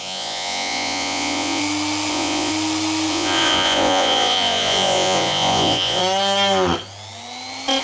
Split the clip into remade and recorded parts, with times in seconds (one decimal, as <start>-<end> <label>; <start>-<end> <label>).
0.0-1.6 remade; 1.6-2.1 recorded; 2.1-2.5 remade; 2.5-3.1 recorded; 3.1-6.0 remade; 6.0-7.8 recorded

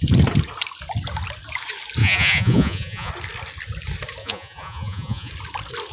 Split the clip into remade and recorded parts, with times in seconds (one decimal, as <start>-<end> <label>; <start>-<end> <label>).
0.0-2.0 recorded; 2.0-3.1 remade; 3.1-4.2 recorded; 4.2-5.3 remade; 5.3-5.9 recorded

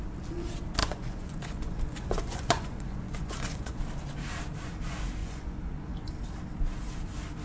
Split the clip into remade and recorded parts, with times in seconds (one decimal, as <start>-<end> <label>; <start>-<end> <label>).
0.0-0.8 recorded; 0.8-3.8 remade; 3.8-5.2 recorded; 5.2-6.1 remade; 6.1-7.4 recorded

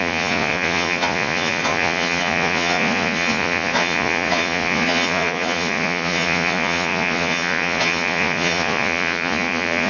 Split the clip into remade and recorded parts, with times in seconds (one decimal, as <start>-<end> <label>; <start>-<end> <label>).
0.0-9.9 remade